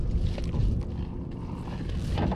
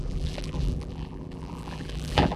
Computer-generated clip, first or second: second